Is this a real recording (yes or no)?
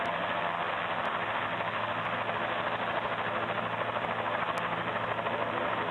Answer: no